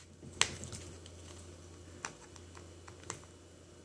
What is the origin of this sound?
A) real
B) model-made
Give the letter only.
A